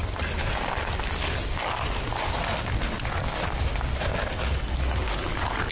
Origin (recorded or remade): recorded